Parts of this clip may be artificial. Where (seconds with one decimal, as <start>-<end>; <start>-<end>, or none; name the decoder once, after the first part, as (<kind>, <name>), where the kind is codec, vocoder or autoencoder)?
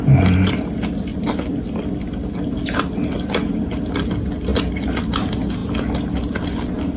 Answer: none